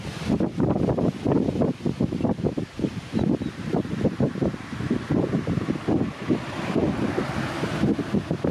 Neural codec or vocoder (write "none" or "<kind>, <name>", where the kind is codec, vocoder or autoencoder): none